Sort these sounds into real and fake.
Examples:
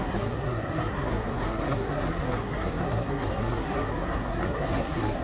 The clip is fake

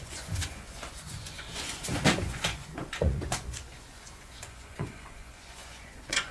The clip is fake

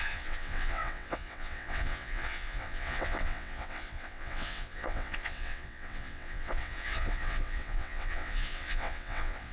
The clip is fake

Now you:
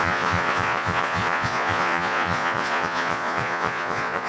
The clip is fake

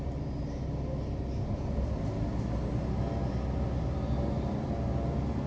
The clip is real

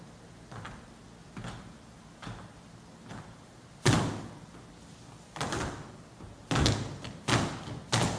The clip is real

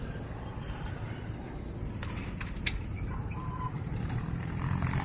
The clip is fake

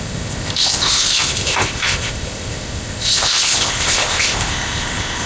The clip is fake